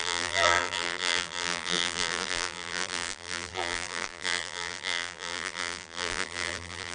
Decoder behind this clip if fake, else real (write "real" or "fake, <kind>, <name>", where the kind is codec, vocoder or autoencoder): fake, vocoder, BigVGAN v2